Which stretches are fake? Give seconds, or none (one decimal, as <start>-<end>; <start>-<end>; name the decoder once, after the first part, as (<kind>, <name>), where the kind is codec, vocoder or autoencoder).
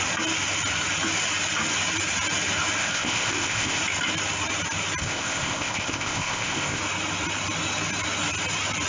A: 2.8-3.8 (codec, ZipCodec); 5.0-6.8